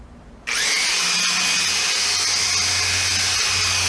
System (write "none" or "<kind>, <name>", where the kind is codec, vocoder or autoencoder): none